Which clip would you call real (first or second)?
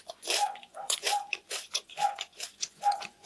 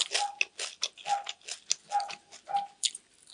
second